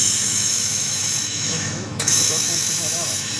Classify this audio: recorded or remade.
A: remade